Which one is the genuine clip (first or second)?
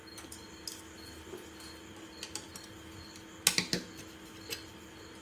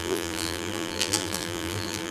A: first